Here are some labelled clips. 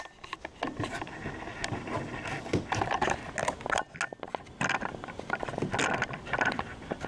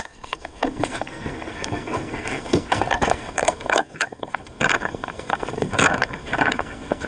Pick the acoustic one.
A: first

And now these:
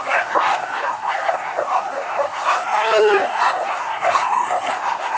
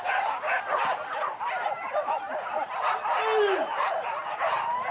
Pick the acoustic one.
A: second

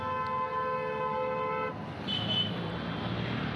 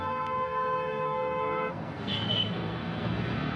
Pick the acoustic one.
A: first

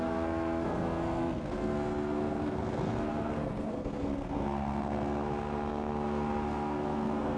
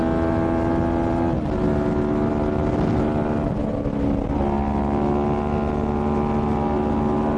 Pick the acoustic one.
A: second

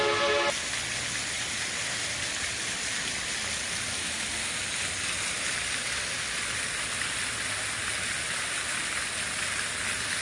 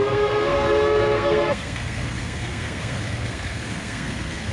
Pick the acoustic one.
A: first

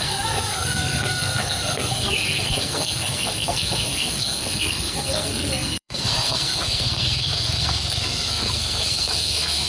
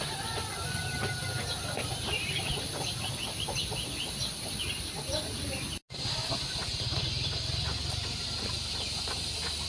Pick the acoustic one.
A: second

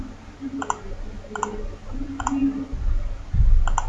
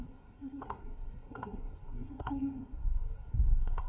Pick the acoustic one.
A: first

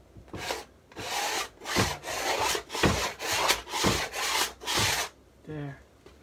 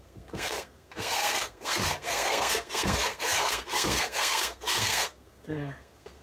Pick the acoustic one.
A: first